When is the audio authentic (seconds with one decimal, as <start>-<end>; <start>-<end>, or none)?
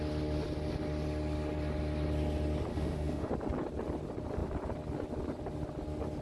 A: 0.0-2.7; 3.3-6.2